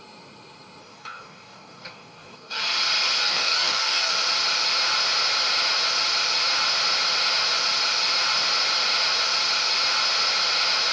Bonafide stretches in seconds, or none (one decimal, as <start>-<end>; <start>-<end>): 0.0-0.8; 2.6-3.2; 4.1-10.9